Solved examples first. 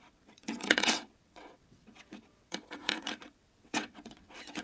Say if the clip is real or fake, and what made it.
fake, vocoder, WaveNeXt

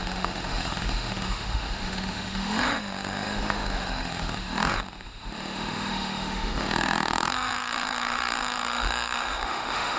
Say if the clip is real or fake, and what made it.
fake, autoencoder, DAC-VAE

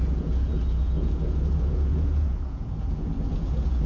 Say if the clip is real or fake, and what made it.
fake, vocoder, Vocos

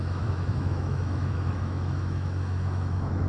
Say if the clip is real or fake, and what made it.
fake, autoencoder, DAC-VAE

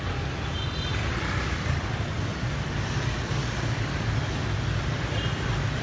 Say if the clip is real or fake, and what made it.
real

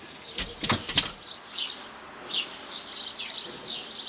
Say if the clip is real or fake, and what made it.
real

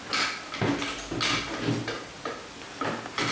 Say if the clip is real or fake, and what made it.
real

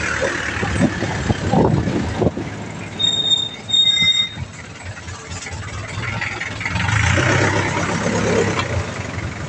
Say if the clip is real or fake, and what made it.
real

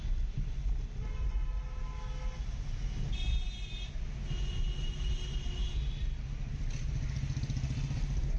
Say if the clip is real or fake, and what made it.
real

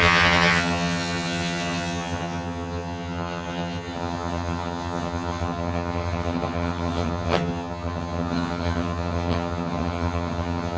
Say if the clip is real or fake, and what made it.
fake, vocoder, HiFi-GAN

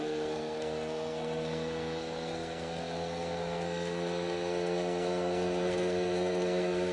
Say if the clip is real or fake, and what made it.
fake, codec, SNAC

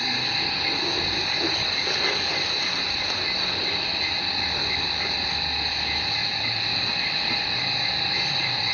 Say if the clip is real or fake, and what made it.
fake, vocoder, BigVGAN v2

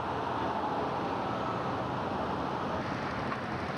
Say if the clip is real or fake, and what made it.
real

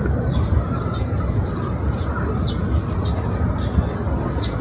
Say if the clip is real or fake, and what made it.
real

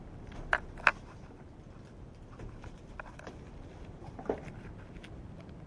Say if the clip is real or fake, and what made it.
real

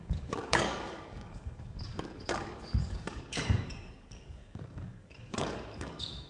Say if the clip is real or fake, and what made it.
fake, codec, DAC